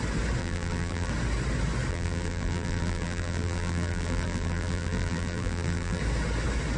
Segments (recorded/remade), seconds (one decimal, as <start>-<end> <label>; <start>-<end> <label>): 0.0-0.4 recorded; 0.4-1.1 remade; 1.1-1.9 recorded; 1.9-6.0 remade; 6.0-6.8 recorded